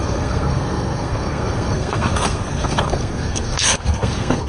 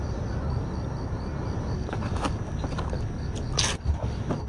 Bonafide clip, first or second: second